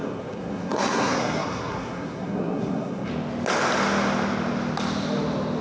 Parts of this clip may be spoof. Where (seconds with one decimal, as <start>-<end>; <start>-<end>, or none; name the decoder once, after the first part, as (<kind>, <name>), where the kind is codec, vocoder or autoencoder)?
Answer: 0.0-3.1 (codec, SNAC)